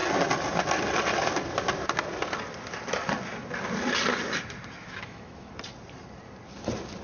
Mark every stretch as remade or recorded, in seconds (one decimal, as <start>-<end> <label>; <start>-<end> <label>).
0.0-4.8 recorded; 4.8-5.5 remade; 5.5-7.0 recorded